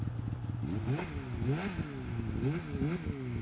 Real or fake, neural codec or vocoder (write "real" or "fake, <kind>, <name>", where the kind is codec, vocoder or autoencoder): real